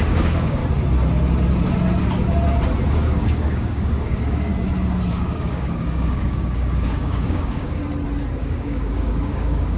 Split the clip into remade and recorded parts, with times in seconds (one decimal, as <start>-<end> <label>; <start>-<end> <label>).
0.0-0.6 remade; 0.6-2.9 recorded; 2.9-4.5 remade; 4.5-5.1 recorded; 5.1-7.8 remade; 7.8-8.4 recorded; 8.4-9.8 remade